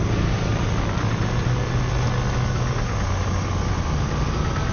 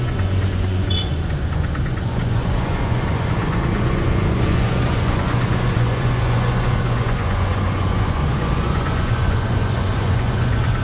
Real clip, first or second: first